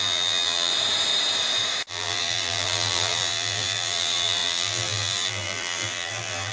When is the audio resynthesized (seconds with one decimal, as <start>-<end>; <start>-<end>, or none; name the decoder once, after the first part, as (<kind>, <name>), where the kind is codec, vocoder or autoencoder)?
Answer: 0.0-0.7 (vocoder, BigVGAN v2); 1.9-6.5